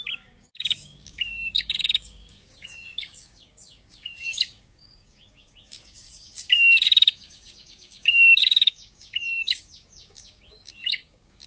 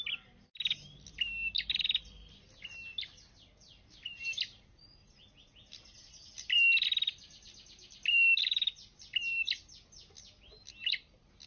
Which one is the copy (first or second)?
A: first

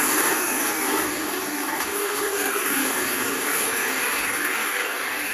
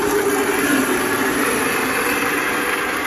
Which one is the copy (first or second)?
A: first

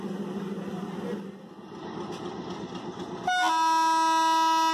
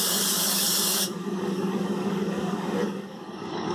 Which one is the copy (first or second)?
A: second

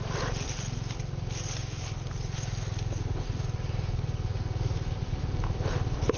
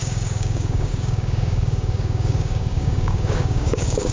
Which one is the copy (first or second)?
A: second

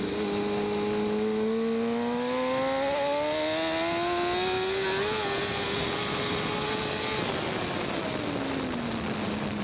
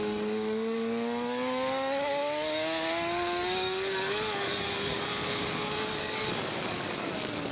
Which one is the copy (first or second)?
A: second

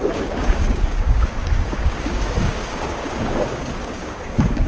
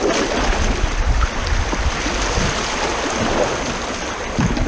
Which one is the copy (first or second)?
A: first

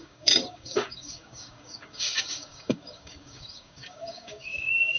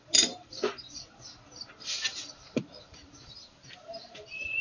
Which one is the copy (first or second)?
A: first